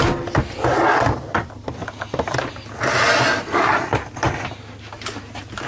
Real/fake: real